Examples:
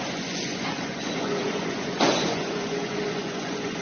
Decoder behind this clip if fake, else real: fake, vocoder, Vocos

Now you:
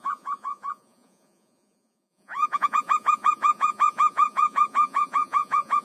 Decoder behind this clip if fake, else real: fake, vocoder, Vocos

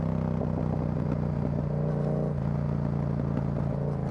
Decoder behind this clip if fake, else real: real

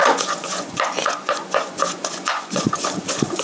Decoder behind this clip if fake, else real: fake, vocoder, Vocos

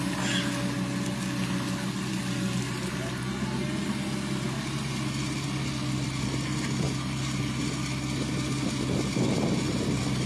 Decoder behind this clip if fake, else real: real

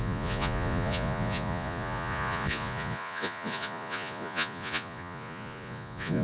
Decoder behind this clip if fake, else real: fake, vocoder, Vocos